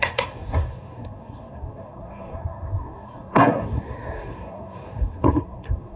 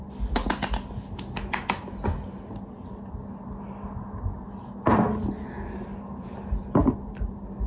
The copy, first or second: first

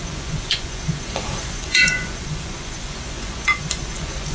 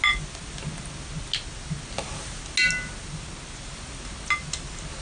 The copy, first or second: first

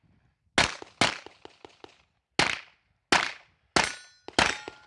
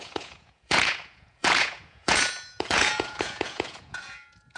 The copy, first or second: second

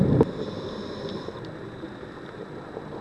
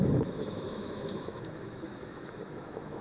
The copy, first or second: second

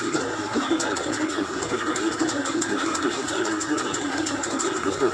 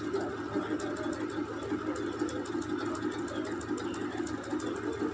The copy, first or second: first